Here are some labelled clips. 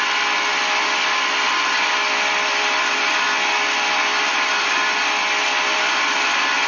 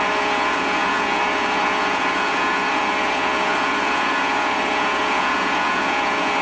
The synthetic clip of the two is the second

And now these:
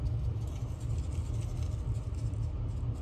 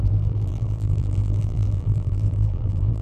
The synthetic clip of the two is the second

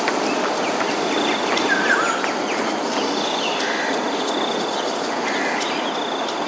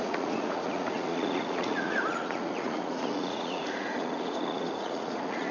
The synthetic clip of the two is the second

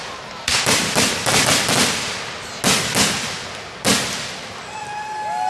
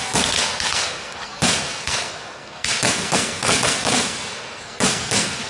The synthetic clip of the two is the second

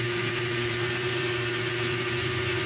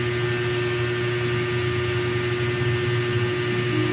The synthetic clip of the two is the first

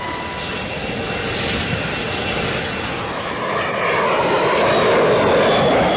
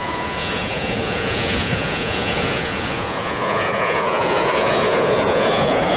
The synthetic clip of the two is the second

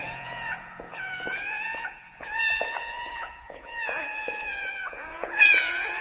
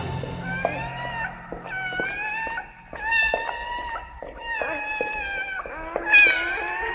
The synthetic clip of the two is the first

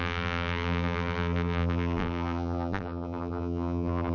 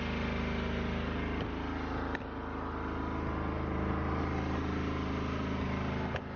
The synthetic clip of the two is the first